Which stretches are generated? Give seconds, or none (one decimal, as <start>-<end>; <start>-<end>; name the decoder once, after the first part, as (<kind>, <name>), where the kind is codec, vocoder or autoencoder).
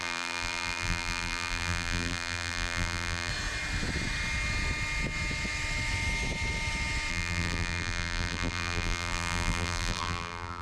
0.0-3.3 (vocoder, BigVGAN v2); 7.1-10.6